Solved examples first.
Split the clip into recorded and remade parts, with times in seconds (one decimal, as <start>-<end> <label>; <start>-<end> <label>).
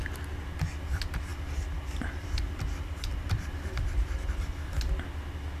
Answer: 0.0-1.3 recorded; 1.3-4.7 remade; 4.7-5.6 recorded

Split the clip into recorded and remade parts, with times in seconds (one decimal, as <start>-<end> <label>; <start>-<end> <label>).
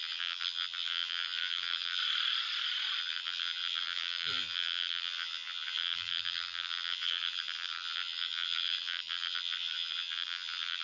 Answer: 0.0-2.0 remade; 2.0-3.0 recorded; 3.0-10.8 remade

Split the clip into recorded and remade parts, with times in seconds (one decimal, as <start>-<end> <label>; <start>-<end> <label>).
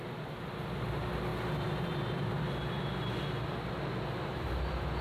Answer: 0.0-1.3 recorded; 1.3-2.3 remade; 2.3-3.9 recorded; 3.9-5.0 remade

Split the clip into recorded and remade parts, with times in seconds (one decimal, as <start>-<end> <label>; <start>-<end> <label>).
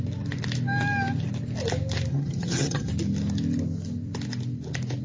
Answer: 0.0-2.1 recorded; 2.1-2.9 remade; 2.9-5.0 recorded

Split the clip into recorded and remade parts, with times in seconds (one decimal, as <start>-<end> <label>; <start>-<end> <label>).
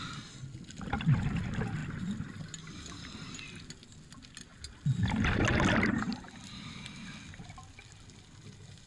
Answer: 0.0-8.9 recorded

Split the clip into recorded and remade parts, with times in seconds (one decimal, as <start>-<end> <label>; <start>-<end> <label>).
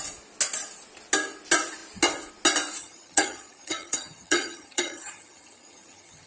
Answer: 0.0-2.8 recorded; 2.8-6.3 remade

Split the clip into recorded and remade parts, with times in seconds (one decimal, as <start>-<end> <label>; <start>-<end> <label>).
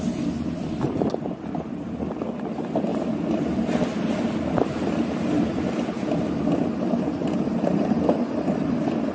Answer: 0.0-9.1 recorded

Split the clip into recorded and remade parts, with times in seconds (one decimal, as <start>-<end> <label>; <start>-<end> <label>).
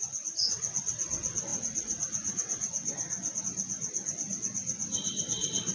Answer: 0.0-5.7 recorded